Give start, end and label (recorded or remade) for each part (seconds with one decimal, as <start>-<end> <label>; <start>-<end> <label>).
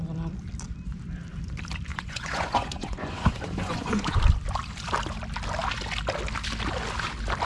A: 0.0-1.9 recorded; 1.9-4.2 remade; 4.2-7.5 recorded